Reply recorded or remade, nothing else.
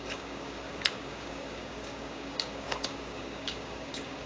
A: remade